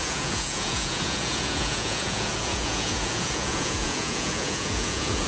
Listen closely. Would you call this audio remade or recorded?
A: remade